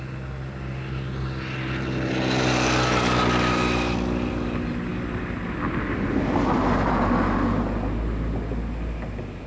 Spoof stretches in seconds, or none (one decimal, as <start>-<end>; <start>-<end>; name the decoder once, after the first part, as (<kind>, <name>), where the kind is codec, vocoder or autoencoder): none